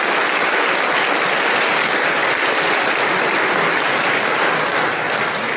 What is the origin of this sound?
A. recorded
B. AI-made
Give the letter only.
A